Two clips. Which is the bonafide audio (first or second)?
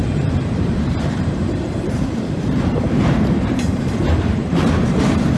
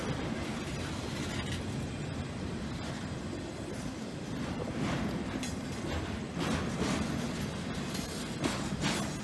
second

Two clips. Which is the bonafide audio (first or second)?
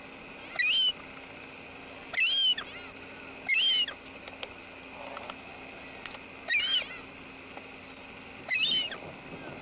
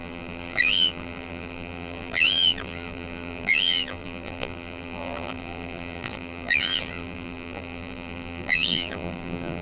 first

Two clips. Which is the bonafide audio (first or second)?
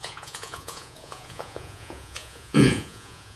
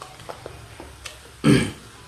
second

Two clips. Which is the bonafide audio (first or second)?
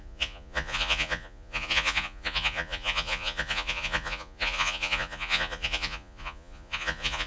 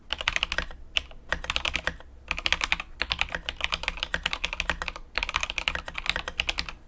second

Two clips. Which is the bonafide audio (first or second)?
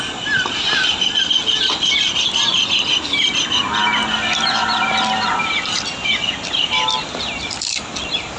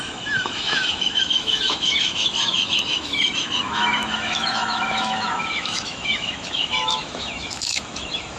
first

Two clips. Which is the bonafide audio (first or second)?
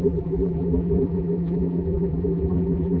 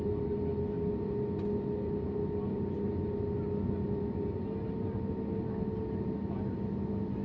second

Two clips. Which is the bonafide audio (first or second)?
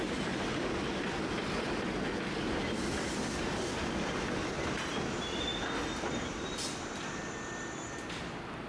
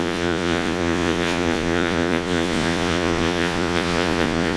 first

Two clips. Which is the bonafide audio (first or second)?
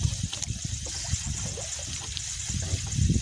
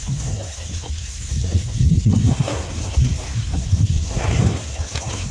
first